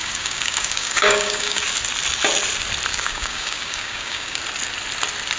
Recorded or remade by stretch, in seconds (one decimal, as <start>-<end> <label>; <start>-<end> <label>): 0.0-1.6 remade; 1.6-2.9 recorded; 2.9-4.4 remade; 4.4-5.4 recorded